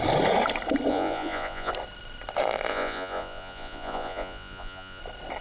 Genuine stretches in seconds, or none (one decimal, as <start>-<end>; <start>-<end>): 0.0-0.9; 1.7-2.7; 5.0-5.4

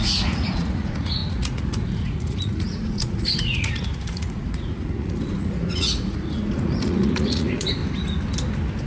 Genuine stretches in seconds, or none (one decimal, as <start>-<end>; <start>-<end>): 7.8-8.9